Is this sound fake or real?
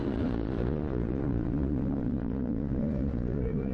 fake